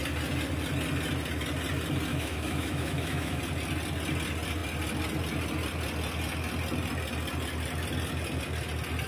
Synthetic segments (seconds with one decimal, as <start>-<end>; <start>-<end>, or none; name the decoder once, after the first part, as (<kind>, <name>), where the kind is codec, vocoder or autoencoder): 2.1-3.4 (autoencoder, DAC-VAE)